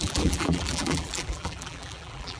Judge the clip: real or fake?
fake